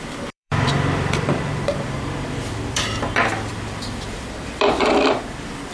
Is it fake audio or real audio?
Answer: fake